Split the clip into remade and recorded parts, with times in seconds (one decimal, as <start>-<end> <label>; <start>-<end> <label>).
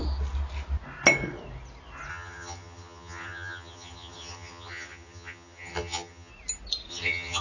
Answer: 0.0-2.1 recorded; 2.1-6.3 remade; 6.3-6.9 recorded; 6.9-7.4 remade